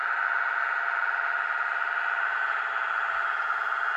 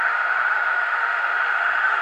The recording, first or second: first